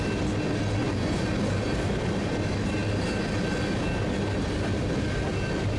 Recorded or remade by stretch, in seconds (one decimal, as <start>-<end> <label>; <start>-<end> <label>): 0.0-0.8 recorded; 0.8-1.3 remade; 1.3-5.8 recorded

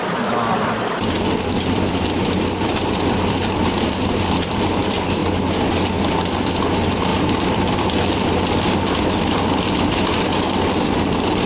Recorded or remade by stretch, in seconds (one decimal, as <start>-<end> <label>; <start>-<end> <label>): 0.0-5.2 remade; 5.2-6.5 recorded; 6.5-11.5 remade

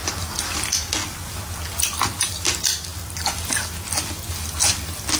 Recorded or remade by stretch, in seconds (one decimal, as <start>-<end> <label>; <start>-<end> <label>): 0.0-5.2 recorded